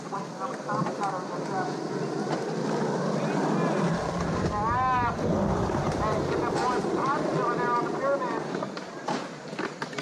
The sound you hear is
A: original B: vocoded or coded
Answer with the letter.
A